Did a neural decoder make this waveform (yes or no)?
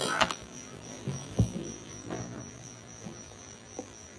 yes